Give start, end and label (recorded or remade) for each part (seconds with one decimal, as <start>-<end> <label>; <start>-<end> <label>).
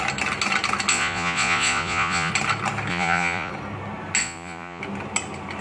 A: 0.0-0.9 recorded; 0.9-2.3 remade; 2.3-2.9 recorded; 2.9-3.5 remade; 3.5-4.2 recorded; 4.2-4.8 remade; 4.8-5.6 recorded